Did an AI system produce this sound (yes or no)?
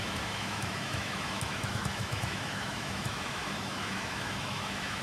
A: yes